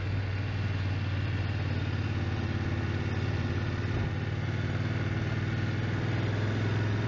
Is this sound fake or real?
real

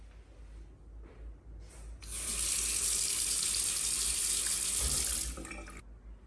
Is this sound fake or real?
real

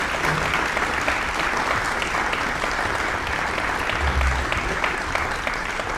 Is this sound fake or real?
real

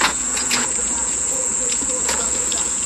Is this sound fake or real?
fake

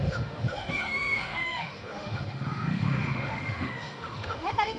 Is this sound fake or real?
fake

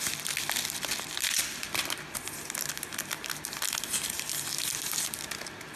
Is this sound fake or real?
real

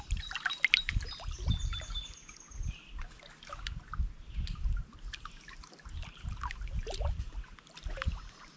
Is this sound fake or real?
real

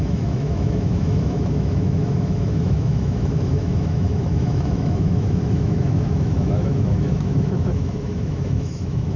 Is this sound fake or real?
fake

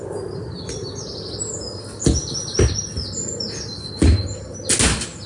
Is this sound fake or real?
real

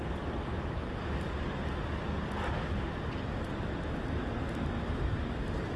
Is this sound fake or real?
real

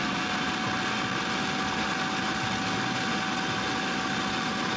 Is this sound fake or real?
real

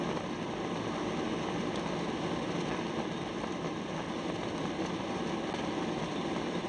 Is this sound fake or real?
real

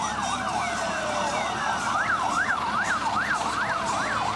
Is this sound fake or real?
fake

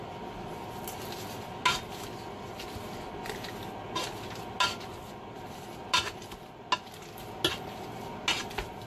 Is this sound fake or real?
real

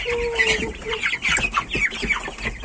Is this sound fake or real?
real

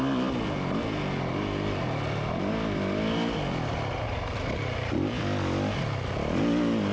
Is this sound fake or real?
real